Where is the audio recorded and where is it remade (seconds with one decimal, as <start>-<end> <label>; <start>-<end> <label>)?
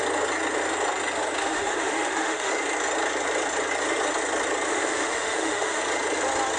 0.0-1.4 recorded; 1.4-2.5 remade; 2.5-4.7 recorded; 4.7-5.8 remade; 5.8-6.6 recorded